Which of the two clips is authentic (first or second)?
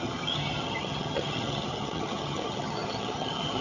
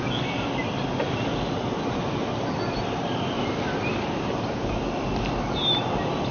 second